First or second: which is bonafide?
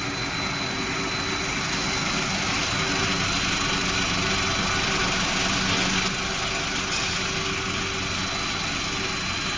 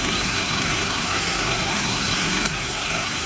first